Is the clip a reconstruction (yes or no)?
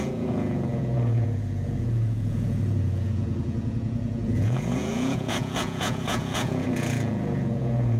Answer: yes